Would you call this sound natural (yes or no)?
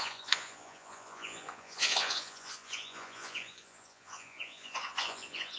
no